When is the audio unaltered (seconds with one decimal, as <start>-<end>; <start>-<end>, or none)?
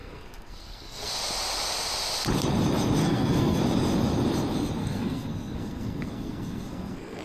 1.1-3.0; 3.6-4.8